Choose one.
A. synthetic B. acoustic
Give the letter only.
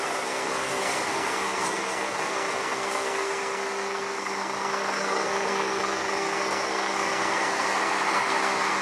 A